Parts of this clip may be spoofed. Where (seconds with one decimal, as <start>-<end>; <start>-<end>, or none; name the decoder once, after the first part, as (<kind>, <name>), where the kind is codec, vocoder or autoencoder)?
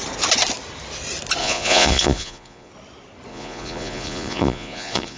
1.4-2.7 (vocoder, Vocos); 3.3-5.2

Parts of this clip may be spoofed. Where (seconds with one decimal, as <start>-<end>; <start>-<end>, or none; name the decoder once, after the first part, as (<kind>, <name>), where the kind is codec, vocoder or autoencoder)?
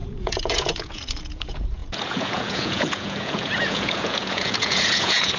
0.0-5.4 (vocoder, Vocos)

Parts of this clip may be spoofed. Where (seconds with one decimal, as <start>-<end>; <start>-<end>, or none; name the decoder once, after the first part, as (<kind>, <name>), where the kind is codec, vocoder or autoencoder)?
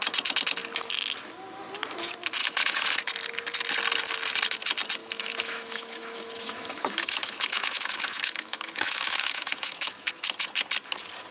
2.4-3.0 (autoencoder, DAC-VAE); 5.0-10.1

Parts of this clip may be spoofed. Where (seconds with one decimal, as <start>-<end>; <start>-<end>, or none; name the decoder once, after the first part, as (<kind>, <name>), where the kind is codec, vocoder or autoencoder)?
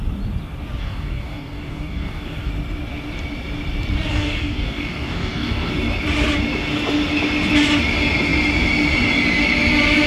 0.8-2.5 (codec, DAC); 4.1-5.7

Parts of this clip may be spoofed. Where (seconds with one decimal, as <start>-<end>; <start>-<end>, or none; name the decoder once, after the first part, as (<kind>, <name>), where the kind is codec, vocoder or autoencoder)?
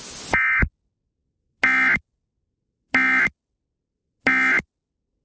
none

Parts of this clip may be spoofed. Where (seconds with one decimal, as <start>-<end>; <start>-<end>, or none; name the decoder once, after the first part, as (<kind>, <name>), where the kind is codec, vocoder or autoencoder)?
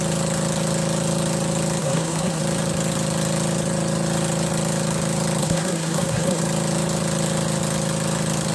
1.8-2.4 (codec, SNAC); 5.4-6.4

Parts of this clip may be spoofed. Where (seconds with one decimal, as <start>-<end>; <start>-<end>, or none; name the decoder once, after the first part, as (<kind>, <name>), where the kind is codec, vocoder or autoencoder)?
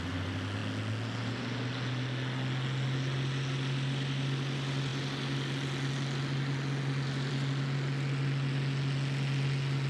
none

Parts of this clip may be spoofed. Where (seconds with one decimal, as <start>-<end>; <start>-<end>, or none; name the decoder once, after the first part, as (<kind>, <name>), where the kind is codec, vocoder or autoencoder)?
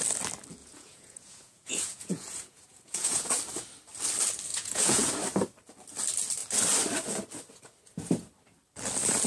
0.6-3.3 (vocoder, Vocos); 4.5-5.1